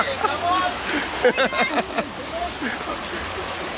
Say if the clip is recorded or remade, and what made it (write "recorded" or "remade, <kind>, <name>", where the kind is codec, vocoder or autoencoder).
recorded